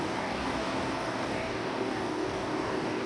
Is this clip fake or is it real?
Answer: fake